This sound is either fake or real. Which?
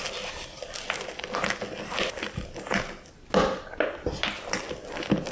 real